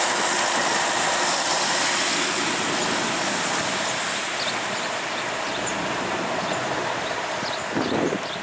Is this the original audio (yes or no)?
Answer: no